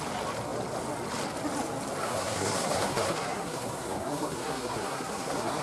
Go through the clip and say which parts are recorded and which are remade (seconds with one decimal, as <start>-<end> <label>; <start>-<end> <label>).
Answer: 0.0-2.0 recorded; 2.0-5.6 remade